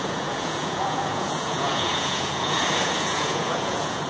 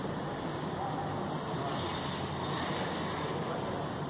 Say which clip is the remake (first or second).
first